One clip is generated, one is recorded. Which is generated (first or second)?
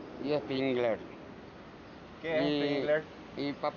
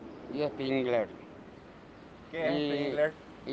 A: second